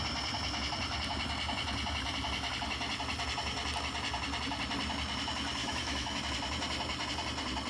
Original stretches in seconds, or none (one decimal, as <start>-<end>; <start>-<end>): 0.0-5.6; 6.2-7.7